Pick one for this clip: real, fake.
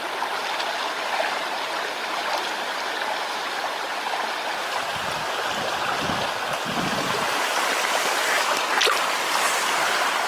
real